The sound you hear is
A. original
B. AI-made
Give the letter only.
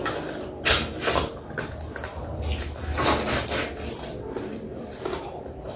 A